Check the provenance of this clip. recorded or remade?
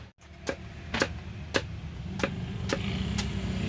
recorded